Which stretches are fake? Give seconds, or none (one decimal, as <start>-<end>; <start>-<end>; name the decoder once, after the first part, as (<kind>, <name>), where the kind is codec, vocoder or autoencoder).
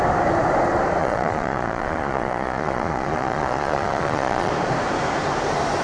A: 1.0-4.5 (vocoder, Vocos)